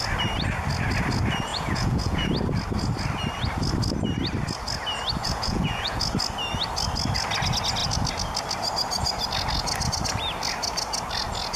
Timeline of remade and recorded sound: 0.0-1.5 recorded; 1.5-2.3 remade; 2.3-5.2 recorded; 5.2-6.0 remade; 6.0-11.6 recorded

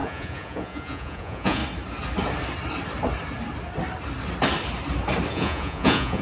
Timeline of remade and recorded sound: 0.0-1.6 remade; 1.6-5.3 recorded; 5.3-6.2 remade

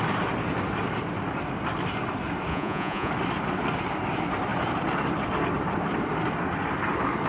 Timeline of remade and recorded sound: 0.0-2.5 recorded; 2.5-3.1 remade; 3.1-7.3 recorded

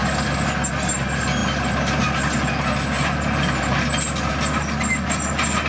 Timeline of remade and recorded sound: 0.0-5.7 recorded

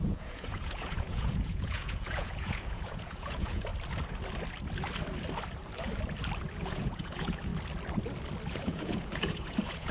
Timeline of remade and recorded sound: 0.0-3.7 remade; 3.7-6.6 recorded; 6.6-7.5 remade; 7.5-8.5 recorded; 8.5-9.9 remade